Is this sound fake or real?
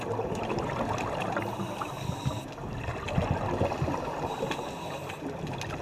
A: real